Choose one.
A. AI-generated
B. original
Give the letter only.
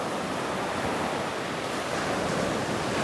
B